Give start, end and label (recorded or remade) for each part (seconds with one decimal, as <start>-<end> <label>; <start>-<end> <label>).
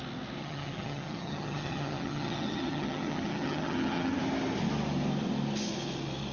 0.0-0.4 recorded; 0.4-4.2 remade; 4.2-6.3 recorded